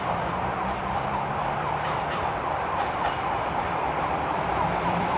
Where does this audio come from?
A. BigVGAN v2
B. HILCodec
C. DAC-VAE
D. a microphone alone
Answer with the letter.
A